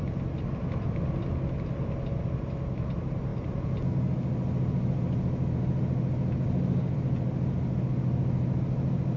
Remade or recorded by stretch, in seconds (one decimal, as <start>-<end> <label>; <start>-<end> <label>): 0.0-9.2 recorded